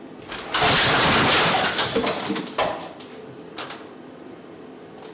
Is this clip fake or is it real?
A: real